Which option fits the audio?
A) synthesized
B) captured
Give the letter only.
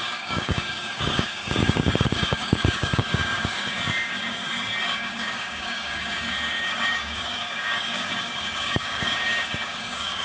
A